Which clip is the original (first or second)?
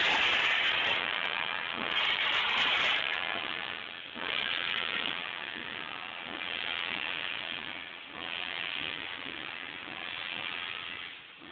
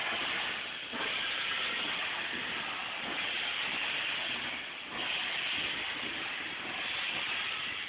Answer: second